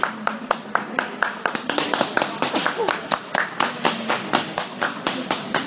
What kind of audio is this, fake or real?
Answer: fake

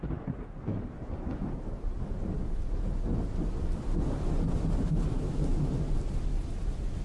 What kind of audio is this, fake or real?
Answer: real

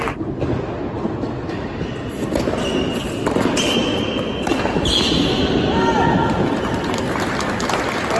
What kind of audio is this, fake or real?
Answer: real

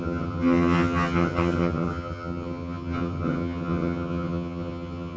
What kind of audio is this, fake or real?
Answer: fake